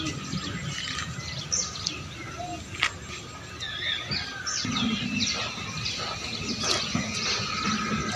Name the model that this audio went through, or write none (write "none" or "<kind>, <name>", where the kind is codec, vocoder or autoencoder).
none